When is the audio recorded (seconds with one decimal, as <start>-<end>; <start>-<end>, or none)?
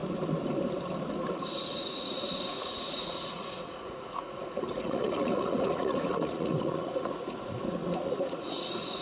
0.0-1.7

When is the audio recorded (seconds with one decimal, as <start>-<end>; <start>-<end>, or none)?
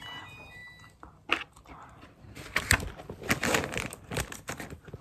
0.0-5.0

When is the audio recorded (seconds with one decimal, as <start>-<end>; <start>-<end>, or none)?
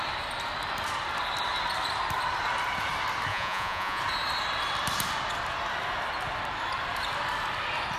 0.0-3.3; 4.0-8.0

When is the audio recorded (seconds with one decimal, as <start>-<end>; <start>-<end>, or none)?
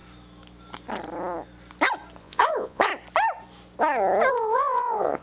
0.0-2.2; 2.9-4.3